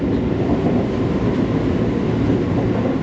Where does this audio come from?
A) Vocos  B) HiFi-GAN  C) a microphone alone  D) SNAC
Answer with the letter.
C